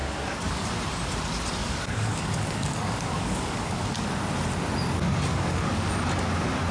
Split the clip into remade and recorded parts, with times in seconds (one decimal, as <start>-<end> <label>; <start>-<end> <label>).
0.0-0.7 remade; 0.7-1.6 recorded; 1.6-4.1 remade; 4.1-5.3 recorded; 5.3-5.9 remade; 5.9-6.7 recorded